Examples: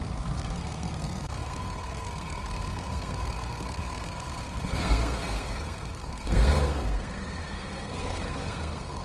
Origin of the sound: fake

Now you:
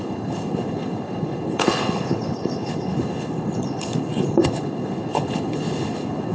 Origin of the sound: fake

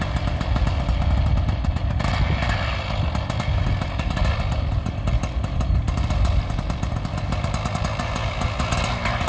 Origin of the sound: real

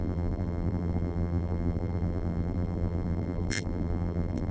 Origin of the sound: fake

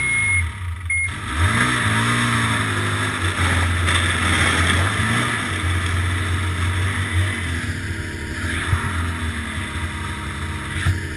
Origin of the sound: real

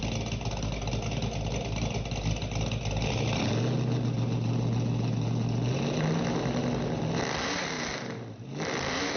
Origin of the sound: real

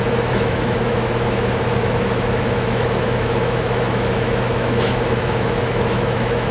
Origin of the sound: fake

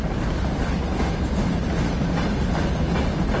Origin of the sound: real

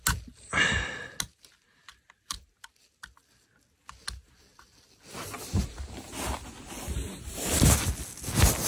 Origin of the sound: real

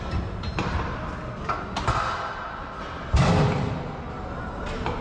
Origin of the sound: real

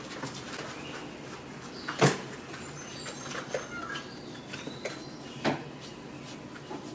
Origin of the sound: real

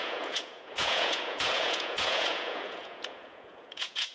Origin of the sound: fake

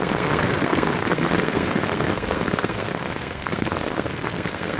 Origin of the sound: fake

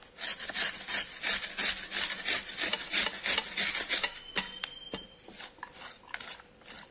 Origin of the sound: real